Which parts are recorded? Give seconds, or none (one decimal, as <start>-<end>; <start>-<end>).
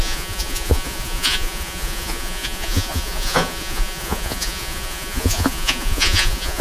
none